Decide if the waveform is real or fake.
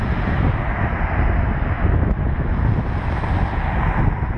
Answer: real